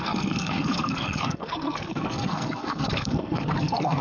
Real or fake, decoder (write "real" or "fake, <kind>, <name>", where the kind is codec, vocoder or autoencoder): fake, codec, SNAC